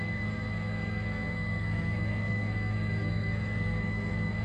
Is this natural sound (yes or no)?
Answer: no